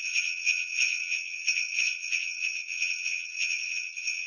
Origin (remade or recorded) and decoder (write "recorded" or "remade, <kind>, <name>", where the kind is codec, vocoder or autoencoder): remade, vocoder, WaveNeXt